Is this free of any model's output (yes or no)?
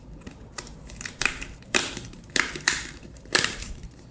no